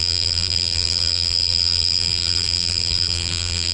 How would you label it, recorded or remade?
remade